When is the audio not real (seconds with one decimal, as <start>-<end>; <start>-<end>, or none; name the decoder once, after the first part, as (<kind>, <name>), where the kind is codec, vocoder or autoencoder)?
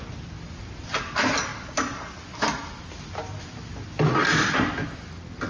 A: none